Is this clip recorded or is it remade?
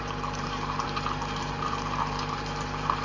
remade